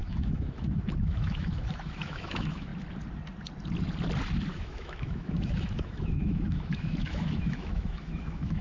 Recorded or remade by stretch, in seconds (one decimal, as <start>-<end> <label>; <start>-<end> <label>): 0.0-2.7 remade; 2.7-4.5 recorded; 4.5-8.6 remade